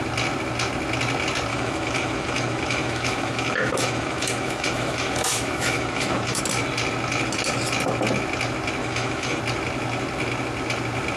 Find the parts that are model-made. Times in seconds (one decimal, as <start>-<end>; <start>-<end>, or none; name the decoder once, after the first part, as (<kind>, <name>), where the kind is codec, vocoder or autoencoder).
1.5-6.4 (autoencoder, DAC-VAE); 8.8-9.4